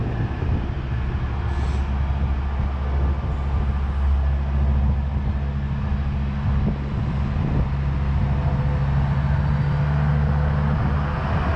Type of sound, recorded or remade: recorded